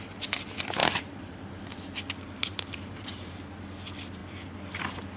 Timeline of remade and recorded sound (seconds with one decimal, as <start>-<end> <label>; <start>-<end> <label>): 0.0-0.8 recorded; 0.8-1.7 remade; 1.7-2.4 recorded; 2.4-3.5 remade; 3.5-5.2 recorded